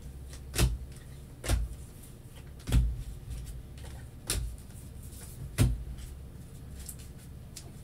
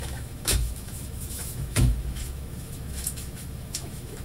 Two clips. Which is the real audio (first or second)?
first